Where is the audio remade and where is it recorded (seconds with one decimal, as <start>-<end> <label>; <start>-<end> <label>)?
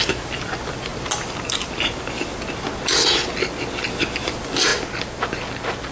0.0-0.9 remade; 0.9-1.6 recorded; 1.6-2.3 remade; 2.3-4.1 recorded; 4.1-4.7 remade; 4.7-5.9 recorded